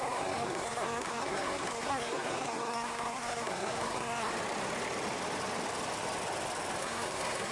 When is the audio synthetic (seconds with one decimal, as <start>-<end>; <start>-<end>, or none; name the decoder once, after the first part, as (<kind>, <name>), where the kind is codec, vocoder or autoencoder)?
0.0-4.3 (codec, SNAC); 6.8-7.5